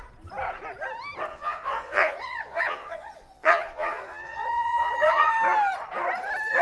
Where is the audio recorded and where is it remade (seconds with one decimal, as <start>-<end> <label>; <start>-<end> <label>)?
0.0-1.3 recorded; 1.3-5.3 remade; 5.3-6.6 recorded